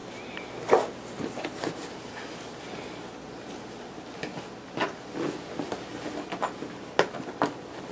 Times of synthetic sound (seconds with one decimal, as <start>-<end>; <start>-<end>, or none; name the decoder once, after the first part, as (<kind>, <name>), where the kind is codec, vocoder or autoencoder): none